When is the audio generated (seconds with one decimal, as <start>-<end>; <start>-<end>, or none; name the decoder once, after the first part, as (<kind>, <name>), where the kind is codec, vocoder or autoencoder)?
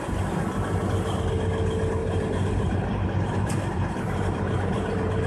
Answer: 2.0-5.3 (vocoder, BigVGAN v2)